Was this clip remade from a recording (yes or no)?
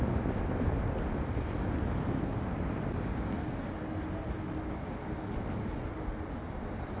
no